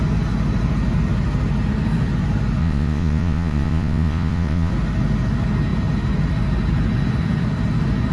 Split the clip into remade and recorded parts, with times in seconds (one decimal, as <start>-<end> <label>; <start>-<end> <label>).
0.0-2.6 recorded; 2.6-4.7 remade; 4.7-8.1 recorded